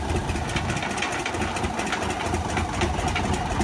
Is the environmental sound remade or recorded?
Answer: recorded